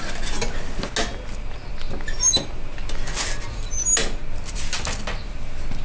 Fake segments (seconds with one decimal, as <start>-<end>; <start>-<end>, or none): none